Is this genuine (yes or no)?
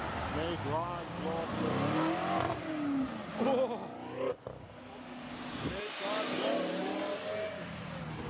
yes